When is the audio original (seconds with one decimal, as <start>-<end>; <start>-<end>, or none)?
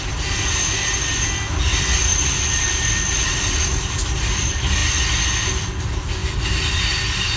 0.0-2.1; 3.8-7.4